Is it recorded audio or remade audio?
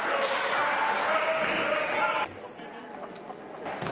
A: recorded